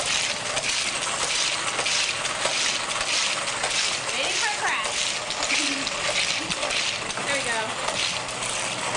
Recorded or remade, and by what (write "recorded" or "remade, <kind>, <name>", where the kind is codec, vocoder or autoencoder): recorded